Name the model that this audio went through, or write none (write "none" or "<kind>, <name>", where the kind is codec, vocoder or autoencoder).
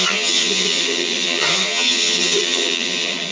vocoder, HiFi-GAN